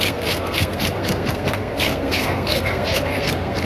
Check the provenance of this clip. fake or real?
fake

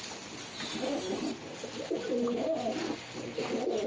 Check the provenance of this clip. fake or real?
real